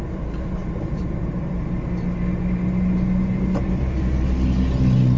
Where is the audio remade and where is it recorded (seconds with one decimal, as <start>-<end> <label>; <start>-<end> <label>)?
0.0-5.2 recorded